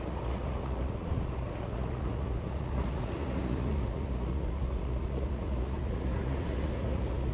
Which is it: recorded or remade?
remade